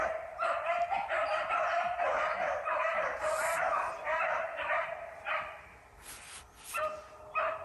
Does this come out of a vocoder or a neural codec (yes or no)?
no